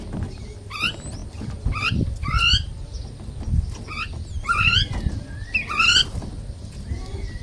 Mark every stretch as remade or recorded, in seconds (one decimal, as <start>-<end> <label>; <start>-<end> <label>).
0.0-7.4 recorded